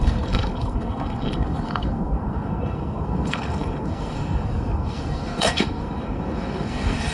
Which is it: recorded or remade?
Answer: remade